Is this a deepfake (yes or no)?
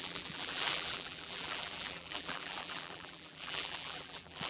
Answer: yes